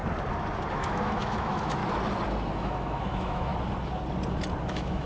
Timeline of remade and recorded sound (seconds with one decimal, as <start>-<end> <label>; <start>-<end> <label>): 0.0-0.7 recorded; 0.7-1.8 remade; 1.8-2.5 recorded; 2.5-3.5 remade; 3.5-4.6 recorded; 4.6-5.1 remade